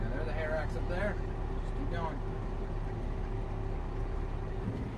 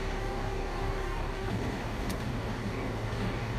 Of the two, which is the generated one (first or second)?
second